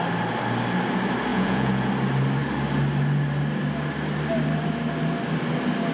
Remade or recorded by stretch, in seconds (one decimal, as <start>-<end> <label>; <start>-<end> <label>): 0.0-1.3 recorded; 1.3-1.9 remade; 1.9-5.9 recorded